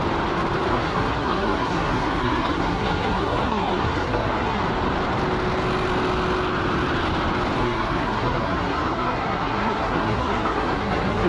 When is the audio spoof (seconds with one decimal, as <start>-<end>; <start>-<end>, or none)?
0.7-4.6; 7.6-11.3